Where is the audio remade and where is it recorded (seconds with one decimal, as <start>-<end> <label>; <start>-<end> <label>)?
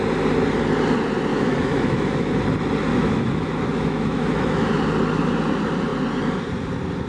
0.0-1.3 recorded; 1.3-2.4 remade; 2.4-2.9 recorded; 2.9-4.7 remade; 4.7-7.1 recorded